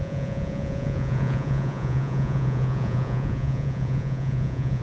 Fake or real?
fake